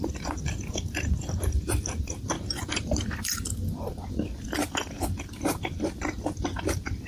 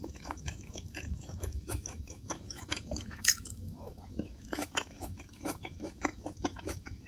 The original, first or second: first